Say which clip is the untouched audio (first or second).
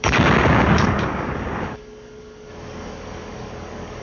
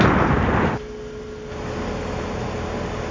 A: second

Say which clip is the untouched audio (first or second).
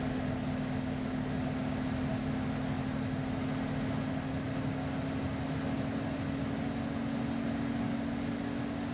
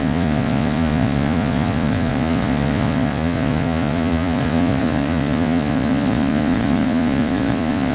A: first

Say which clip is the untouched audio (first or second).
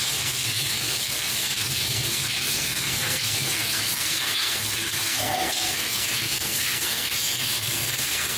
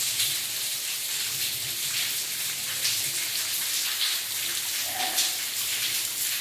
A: second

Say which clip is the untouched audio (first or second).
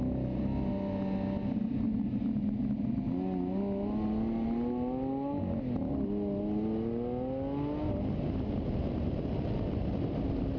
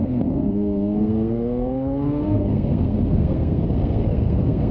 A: first